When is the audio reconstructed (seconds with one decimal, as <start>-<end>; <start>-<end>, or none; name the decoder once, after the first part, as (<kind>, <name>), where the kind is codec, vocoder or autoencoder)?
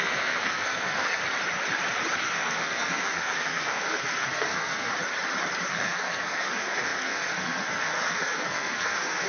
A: 0.0-1.2 (codec, SNAC); 2.2-4.9; 5.7-9.3